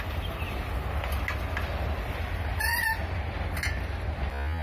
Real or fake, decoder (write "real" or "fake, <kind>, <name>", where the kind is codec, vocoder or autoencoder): real